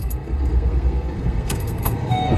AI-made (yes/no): yes